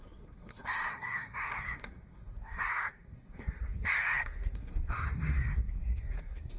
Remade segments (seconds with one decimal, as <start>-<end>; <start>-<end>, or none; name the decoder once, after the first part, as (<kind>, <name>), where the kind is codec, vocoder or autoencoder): 0.0-6.6 (codec, SNAC)